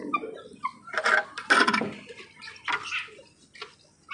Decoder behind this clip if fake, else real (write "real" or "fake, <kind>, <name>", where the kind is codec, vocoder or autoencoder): real